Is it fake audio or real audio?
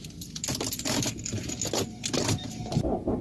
real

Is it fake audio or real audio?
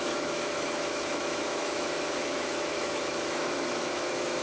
fake